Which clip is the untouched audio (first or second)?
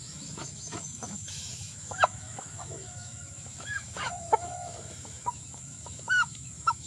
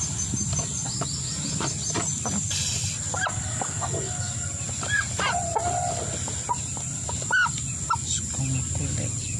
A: second